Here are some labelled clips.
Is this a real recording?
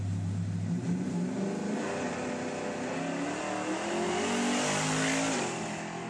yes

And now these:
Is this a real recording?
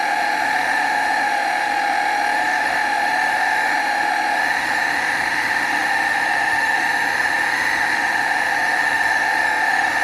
no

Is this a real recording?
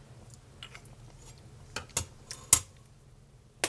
yes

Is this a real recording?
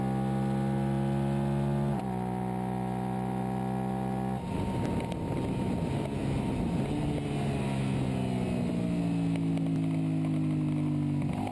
yes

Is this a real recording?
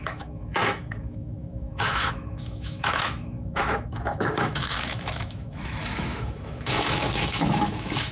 no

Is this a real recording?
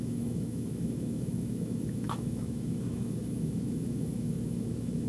no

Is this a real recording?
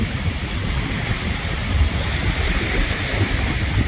yes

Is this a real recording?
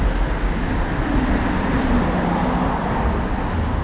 yes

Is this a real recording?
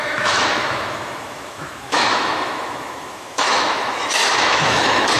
no